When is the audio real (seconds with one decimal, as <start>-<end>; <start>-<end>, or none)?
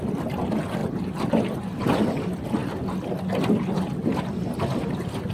0.0-5.3